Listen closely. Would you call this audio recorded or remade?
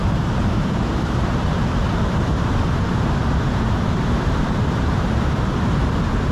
remade